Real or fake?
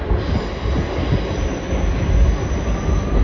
real